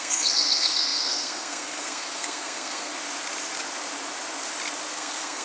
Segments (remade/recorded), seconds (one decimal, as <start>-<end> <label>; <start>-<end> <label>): 0.0-2.9 remade; 2.9-4.9 recorded; 4.9-5.4 remade